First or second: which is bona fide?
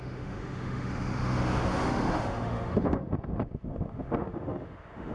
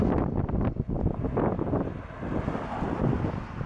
second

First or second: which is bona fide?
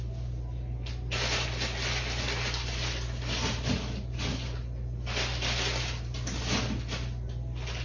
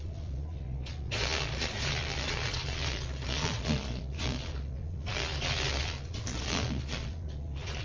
first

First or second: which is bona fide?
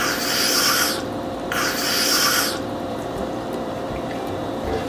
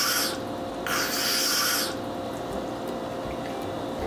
second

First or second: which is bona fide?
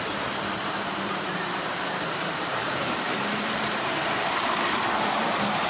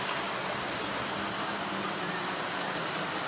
second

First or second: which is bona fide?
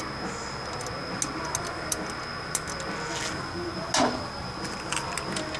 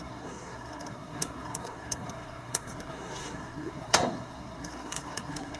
first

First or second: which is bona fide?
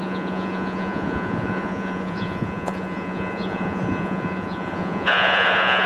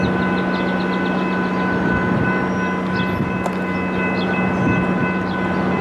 second